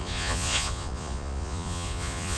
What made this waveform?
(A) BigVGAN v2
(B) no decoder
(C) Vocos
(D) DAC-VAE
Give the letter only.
C